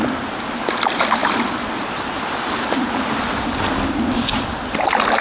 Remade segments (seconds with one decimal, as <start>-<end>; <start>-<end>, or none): none